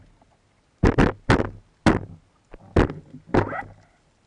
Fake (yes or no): no